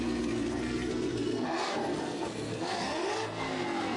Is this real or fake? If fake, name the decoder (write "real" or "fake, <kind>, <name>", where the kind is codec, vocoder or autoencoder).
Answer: fake, codec, SNAC